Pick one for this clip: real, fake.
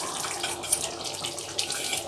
real